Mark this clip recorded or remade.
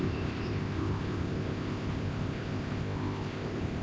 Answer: remade